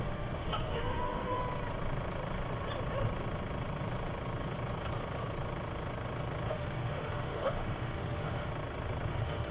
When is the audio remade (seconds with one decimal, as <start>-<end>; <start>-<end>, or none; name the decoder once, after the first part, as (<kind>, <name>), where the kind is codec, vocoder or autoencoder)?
0.0-1.4 (autoencoder, DAC-VAE); 6.5-8.5; 9.1-9.5

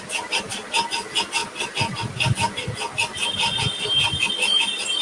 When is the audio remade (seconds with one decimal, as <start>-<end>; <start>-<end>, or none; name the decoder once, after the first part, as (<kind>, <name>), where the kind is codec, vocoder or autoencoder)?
none

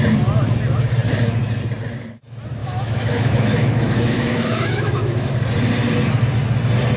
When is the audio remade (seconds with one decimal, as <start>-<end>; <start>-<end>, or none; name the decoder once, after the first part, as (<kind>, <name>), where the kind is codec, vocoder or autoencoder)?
2.6-5.3 (autoencoder, DAC-VAE)

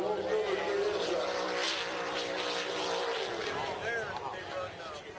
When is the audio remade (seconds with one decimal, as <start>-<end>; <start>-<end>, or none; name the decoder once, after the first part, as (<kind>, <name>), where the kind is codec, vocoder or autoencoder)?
none

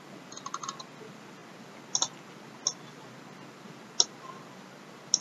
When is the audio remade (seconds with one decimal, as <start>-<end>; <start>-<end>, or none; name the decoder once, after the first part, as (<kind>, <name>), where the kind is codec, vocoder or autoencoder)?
none

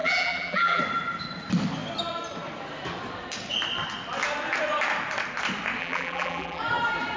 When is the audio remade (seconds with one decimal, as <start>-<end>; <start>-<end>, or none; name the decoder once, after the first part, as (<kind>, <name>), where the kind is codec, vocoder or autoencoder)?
0.0-0.8 (vocoder, BigVGAN v2); 5.8-6.6